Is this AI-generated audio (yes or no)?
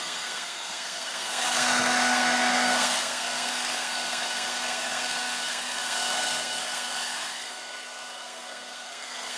yes